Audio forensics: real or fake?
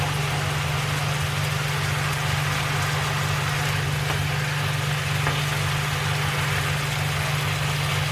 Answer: real